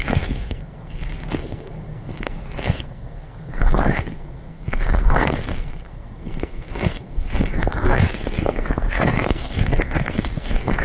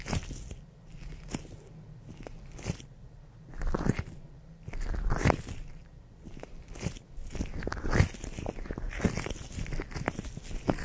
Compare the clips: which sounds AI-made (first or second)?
first